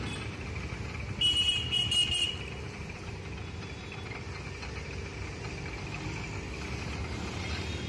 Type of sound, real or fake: real